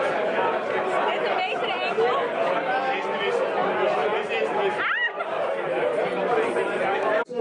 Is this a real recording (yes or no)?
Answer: yes